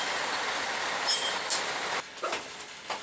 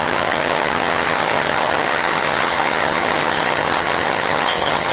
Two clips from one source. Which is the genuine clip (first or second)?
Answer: first